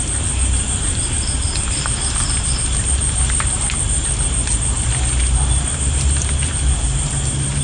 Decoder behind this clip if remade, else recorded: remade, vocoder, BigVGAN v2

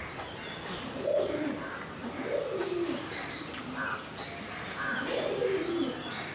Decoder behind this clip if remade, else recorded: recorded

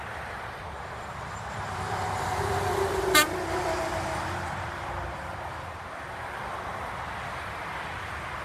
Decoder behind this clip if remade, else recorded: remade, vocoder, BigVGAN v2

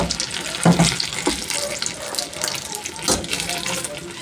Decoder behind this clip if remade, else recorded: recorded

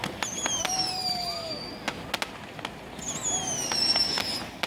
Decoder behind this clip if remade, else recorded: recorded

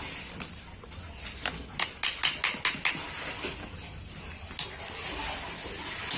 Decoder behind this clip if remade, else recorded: recorded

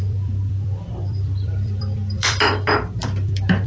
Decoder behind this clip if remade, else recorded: remade, vocoder, BigVGAN v2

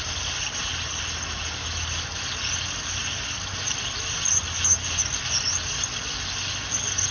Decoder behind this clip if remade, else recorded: recorded